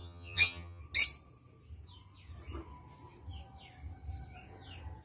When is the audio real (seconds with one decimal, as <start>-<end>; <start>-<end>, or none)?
0.8-5.0